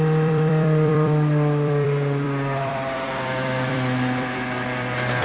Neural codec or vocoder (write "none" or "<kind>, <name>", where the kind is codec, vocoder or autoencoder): vocoder, BigVGAN v2